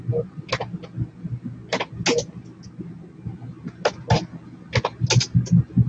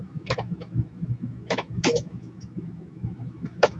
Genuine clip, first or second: first